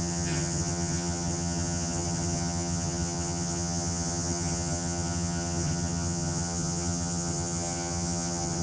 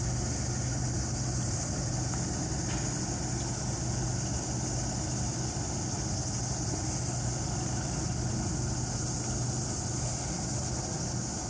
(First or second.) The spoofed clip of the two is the first